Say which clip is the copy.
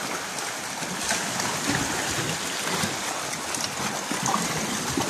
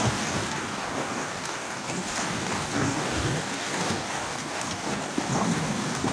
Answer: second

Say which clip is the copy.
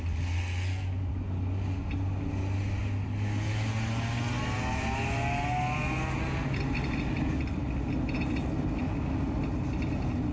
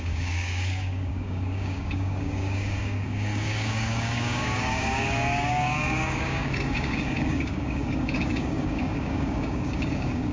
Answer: second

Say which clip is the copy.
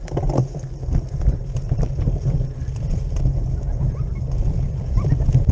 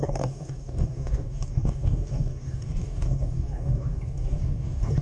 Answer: second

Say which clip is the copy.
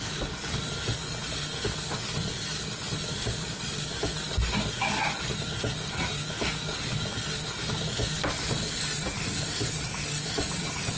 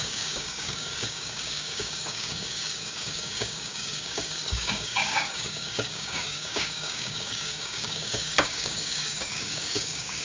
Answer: second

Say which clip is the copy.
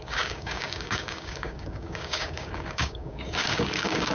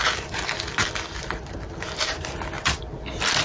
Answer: first